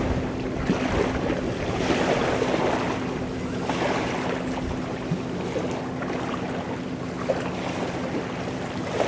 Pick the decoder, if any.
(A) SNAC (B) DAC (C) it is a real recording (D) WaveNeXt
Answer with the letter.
C